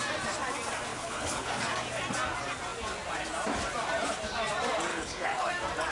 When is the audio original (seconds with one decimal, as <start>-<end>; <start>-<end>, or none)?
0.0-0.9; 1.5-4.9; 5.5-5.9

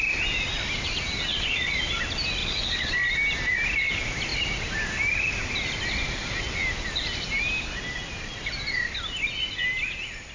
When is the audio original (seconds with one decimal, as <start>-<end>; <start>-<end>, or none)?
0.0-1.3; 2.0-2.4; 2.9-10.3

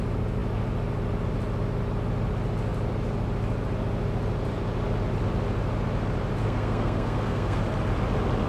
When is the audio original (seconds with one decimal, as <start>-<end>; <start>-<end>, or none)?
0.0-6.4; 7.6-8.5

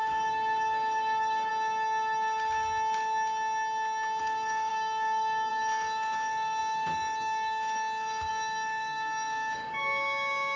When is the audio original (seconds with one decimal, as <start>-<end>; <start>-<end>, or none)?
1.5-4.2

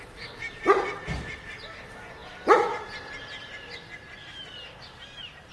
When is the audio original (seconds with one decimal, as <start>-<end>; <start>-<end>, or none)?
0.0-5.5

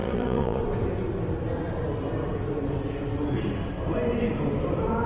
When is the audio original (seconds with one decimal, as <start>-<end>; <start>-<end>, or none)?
0.6-5.1

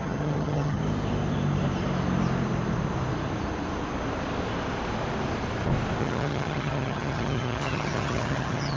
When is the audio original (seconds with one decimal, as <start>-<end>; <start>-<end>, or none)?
0.8-6.0